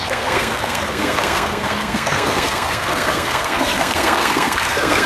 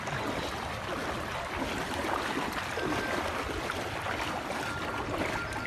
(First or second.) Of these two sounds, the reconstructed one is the first